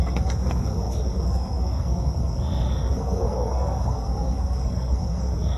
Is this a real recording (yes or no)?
no